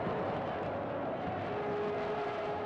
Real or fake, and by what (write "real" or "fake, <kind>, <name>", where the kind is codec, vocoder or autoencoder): real